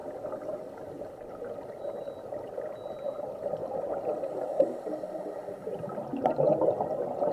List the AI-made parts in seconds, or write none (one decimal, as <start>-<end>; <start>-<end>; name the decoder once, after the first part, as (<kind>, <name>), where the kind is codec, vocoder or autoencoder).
none